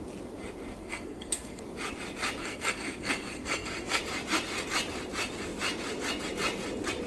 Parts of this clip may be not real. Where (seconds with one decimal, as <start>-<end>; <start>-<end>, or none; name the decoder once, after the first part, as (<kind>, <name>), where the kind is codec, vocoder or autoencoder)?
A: 0.8-1.6 (codec, SNAC); 2.4-4.0